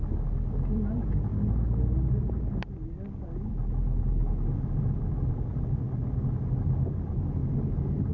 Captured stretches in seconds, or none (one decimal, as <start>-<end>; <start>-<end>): 0.0-7.4